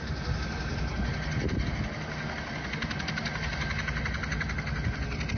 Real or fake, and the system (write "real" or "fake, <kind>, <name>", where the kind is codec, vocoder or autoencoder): real